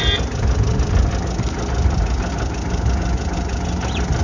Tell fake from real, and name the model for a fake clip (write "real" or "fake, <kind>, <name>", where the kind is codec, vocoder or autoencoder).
real